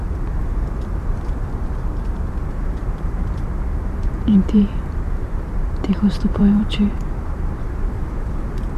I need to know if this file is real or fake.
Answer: fake